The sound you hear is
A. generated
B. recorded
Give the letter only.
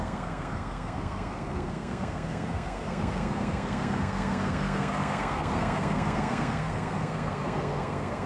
A